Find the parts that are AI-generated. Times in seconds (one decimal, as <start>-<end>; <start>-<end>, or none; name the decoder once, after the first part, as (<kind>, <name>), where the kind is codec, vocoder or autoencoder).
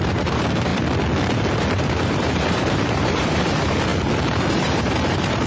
0.0-0.7 (vocoder, BigVGAN v2); 1.6-3.9; 4.6-5.5